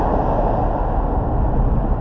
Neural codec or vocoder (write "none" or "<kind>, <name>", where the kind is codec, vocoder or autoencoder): none